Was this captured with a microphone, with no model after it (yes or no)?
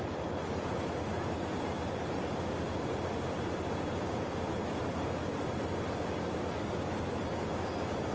yes